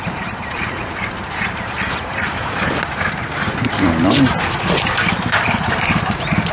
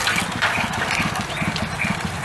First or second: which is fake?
first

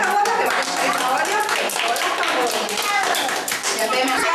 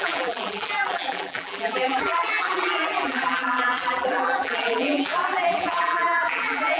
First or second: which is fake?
second